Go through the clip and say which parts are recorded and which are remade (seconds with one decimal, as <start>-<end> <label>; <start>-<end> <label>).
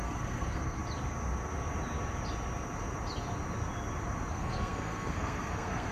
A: 0.0-0.8 remade; 0.8-4.3 recorded; 4.3-5.9 remade